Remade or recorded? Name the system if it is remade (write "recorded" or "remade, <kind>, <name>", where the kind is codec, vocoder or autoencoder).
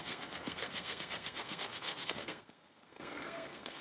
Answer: remade, codec, SNAC